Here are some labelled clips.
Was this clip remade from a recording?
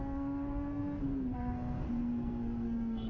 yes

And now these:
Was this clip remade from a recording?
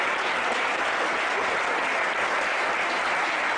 no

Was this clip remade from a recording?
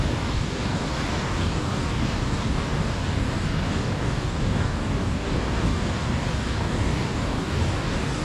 yes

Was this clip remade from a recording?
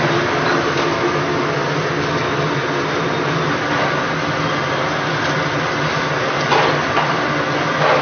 no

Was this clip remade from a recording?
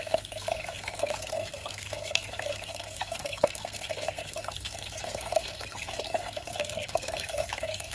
yes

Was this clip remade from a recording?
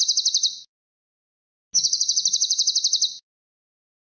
no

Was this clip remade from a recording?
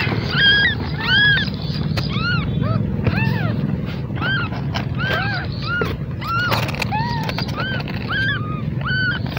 no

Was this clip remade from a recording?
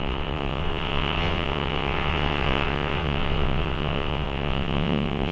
yes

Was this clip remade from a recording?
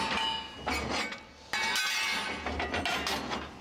no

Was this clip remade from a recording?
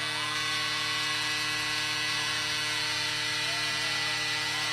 no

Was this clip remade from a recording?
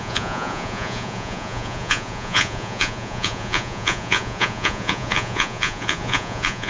yes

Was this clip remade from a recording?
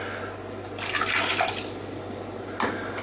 no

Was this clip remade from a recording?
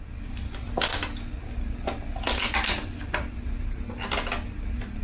no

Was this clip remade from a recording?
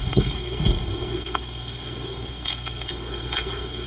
yes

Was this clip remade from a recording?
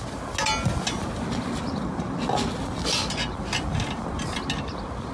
no